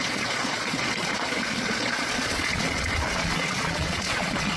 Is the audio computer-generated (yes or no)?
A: yes